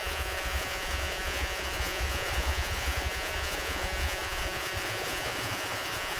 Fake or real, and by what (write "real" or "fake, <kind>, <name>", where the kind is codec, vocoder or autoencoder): fake, vocoder, Vocos